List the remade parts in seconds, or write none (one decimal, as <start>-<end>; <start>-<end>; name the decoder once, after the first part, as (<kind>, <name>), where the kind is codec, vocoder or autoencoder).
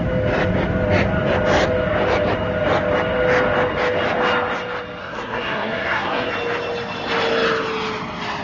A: 5.0-6.3 (codec, SNAC)